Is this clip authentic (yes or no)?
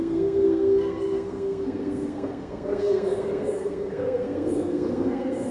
no